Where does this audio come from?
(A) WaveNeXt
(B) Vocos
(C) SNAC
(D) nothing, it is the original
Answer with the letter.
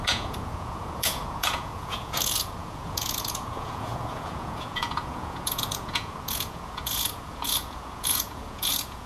B